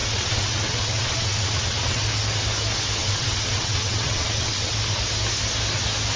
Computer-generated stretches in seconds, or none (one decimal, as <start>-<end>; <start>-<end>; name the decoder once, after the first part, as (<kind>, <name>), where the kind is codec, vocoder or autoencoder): 0.0-2.0 (vocoder, WaveNeXt); 3.0-4.7